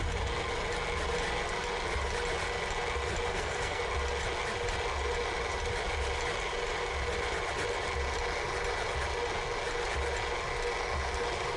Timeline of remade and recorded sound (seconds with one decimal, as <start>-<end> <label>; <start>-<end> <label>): 0.0-3.3 recorded; 3.3-3.8 remade; 3.8-11.6 recorded